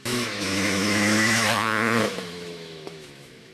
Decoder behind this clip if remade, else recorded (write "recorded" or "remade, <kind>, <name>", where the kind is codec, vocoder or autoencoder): remade, autoencoder, DAC-VAE